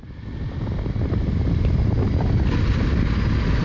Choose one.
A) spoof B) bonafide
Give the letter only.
B